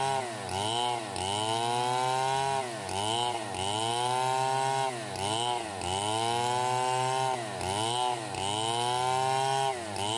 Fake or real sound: real